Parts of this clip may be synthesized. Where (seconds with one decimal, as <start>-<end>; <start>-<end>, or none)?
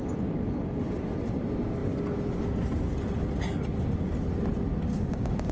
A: 4.9-5.5